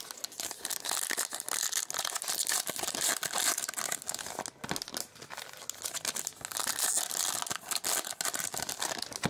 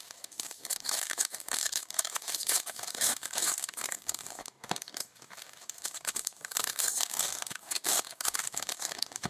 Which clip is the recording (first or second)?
first